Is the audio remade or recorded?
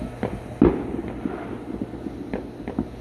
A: recorded